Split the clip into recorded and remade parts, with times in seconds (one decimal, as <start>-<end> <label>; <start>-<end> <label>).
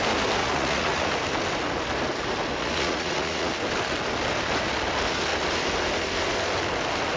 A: 0.0-0.4 recorded; 0.4-1.1 remade; 1.1-2.6 recorded; 2.6-3.5 remade; 3.5-7.2 recorded